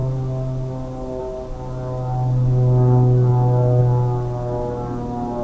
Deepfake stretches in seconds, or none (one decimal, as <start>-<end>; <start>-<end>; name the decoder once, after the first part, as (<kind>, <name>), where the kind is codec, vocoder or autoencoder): none